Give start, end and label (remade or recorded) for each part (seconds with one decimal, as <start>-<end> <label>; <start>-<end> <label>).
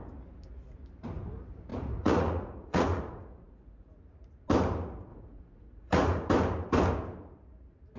0.0-1.7 recorded; 1.7-4.0 remade; 4.0-5.1 recorded; 5.1-6.3 remade; 6.3-8.0 recorded